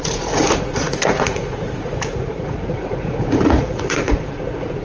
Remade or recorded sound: remade